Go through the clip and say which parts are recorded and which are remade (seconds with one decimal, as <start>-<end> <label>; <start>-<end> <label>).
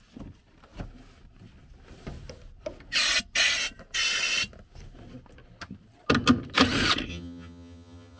0.0-7.1 recorded; 7.1-8.2 remade